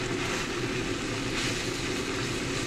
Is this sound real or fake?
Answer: real